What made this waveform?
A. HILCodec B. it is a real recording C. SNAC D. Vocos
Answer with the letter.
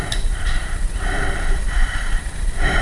B